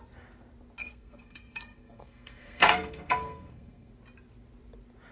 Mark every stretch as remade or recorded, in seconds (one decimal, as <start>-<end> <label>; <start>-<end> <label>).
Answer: 0.0-0.8 recorded; 0.8-3.9 remade; 3.9-5.1 recorded